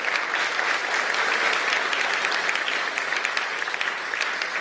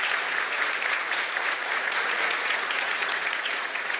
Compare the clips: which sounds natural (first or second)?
first